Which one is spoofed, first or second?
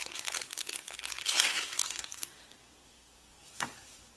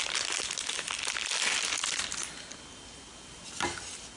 first